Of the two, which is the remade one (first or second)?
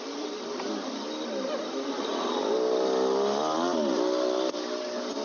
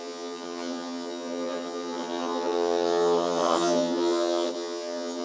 second